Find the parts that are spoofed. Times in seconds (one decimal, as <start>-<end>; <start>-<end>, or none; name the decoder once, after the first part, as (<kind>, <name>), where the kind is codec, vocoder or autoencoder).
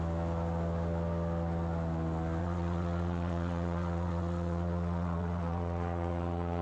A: 2.4-6.6 (vocoder, WaveNeXt)